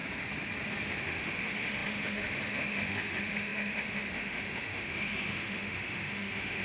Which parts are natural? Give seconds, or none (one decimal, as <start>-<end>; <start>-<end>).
0.0-1.0